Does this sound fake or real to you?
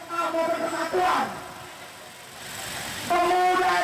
real